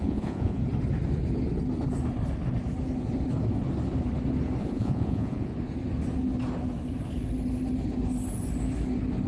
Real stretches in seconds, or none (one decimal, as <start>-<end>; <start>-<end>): 0.6-4.6; 5.5-9.3